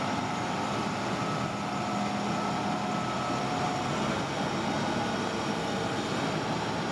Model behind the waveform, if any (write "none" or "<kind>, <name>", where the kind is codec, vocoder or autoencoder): none